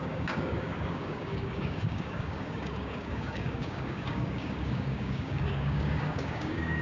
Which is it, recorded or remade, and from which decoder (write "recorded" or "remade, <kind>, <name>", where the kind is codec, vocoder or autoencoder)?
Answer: remade, codec, DAC